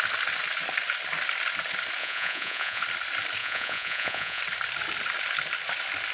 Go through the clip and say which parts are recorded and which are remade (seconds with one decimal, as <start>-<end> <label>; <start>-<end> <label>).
0.0-2.0 recorded; 2.0-2.8 remade; 2.8-3.4 recorded; 3.4-4.4 remade; 4.4-6.1 recorded